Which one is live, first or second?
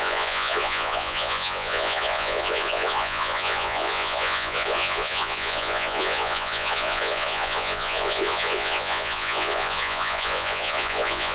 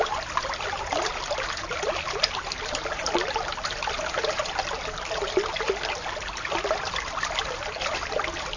second